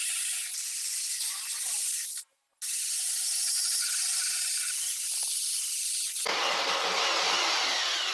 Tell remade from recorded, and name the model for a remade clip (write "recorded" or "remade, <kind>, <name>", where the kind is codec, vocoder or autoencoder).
recorded